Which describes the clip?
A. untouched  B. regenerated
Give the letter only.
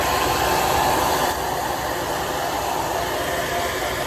B